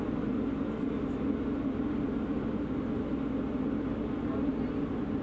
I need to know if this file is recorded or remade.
recorded